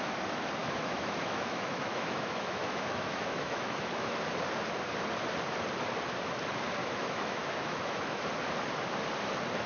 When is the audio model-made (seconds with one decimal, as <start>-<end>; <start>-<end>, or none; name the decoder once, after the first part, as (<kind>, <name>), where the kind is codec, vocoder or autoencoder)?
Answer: 0.6-4.2 (autoencoder, DAC-VAE); 6.8-8.3

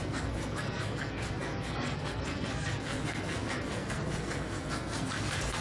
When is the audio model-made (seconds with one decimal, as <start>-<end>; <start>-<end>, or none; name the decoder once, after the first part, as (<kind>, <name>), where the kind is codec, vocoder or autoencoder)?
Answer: 0.0-5.6 (codec, SNAC)

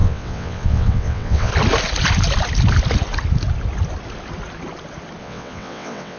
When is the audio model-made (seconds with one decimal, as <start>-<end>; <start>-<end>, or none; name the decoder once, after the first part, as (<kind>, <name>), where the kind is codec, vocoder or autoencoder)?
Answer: 0.0-1.5 (vocoder, WaveNeXt); 5.2-6.2

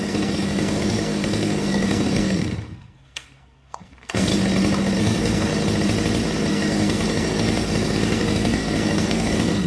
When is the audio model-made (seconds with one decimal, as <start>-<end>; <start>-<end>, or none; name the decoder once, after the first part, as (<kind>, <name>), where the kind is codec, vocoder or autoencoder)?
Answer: 0.0-4.3 (codec, SNAC); 5.0-5.5; 6.5-9.7

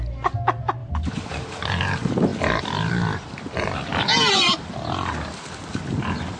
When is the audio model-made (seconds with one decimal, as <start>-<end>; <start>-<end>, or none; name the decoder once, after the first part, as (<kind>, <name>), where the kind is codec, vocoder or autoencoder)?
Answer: 0.8-1.3 (vocoder, BigVGAN v2); 2.3-2.9

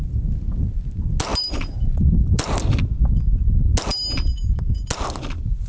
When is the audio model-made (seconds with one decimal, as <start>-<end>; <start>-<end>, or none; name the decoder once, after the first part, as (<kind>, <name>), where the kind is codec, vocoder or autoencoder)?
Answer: 1.3-2.8 (vocoder, BigVGAN v2)

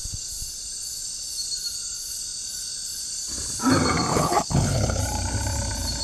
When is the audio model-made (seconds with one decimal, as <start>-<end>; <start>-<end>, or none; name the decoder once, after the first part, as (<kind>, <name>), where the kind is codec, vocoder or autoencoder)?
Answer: 4.1-5.0 (codec, HILCodec)

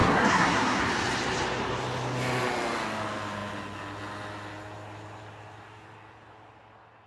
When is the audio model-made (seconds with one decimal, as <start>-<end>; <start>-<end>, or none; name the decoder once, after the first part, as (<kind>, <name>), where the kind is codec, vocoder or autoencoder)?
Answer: 0.0-0.8 (codec, SNAC)